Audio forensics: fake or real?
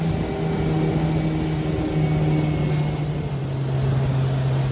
real